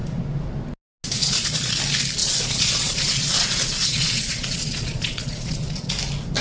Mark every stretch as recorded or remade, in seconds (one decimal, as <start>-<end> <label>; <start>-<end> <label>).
0.0-1.2 recorded; 1.2-1.8 remade; 1.8-2.2 recorded; 2.2-5.9 remade; 5.9-6.4 recorded